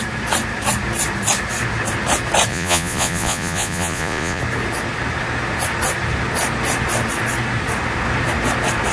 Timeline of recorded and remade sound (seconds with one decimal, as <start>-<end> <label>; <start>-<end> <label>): 0.0-2.5 recorded; 2.5-4.4 remade; 4.4-8.9 recorded